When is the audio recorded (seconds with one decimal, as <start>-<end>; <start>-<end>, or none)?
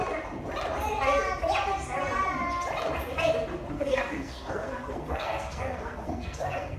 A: 0.0-3.7